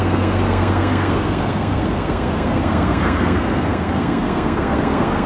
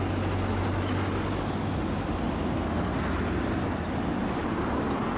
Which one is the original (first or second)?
second